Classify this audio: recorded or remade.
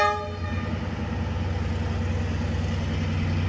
recorded